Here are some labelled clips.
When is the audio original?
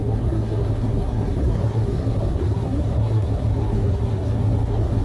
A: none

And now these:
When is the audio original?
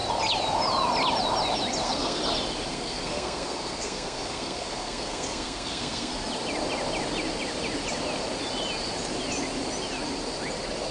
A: 0.0-1.8; 2.2-2.7; 6.1-10.9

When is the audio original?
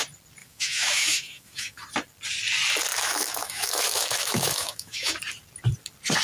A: 0.0-0.4; 1.8-2.9; 5.2-6.2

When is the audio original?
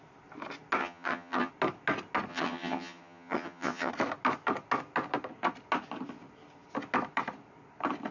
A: 0.0-0.8; 1.5-2.3; 3.9-8.1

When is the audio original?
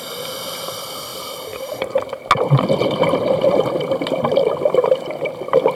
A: 0.0-1.1; 1.6-3.4; 4.5-5.8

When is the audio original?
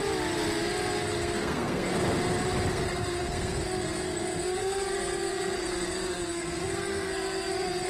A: 0.0-1.0; 1.9-2.7